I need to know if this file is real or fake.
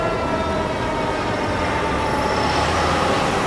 real